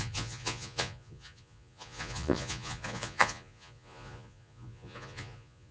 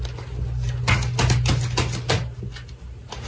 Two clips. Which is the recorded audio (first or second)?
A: second